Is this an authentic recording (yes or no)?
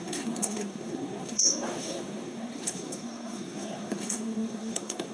no